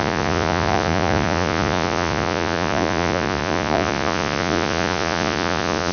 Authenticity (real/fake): fake